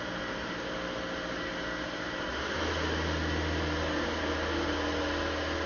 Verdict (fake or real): real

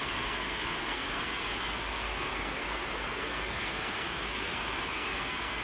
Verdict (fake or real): fake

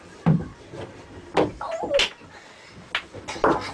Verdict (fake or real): real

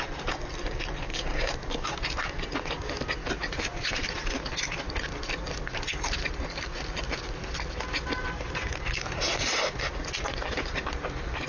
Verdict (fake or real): real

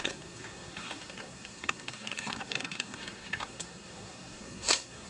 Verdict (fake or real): fake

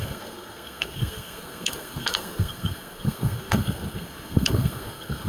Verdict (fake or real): fake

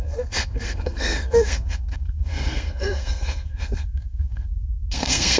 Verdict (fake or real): fake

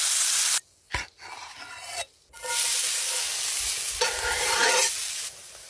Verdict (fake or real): real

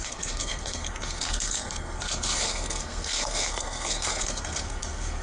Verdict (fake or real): fake